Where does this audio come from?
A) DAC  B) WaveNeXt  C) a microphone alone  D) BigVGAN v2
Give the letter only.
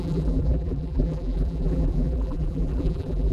D